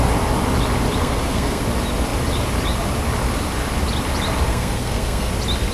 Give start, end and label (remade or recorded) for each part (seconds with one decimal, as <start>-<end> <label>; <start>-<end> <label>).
0.0-1.0 recorded; 1.0-1.6 remade; 1.6-4.5 recorded; 4.5-5.3 remade; 5.3-5.7 recorded